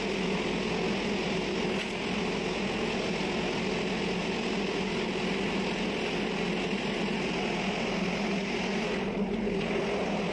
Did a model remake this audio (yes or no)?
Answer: no